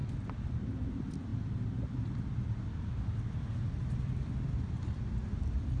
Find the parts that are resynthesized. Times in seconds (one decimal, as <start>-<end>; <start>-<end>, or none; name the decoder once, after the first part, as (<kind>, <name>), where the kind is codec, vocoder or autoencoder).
0.9-5.8 (vocoder, BigVGAN v2)